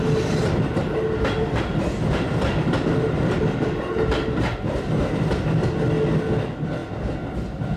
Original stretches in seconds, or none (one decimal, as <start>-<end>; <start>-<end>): 0.0-7.8